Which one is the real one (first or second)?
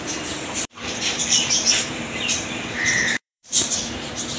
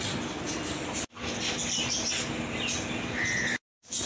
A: second